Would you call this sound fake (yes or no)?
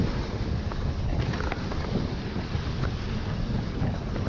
no